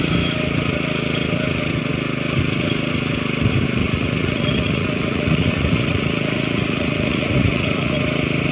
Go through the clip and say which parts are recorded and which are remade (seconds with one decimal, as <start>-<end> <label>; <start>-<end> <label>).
0.0-3.8 recorded; 3.8-8.0 remade; 8.0-8.5 recorded